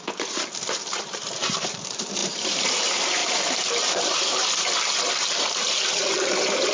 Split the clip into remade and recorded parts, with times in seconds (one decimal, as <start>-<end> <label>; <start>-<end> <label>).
0.0-6.7 remade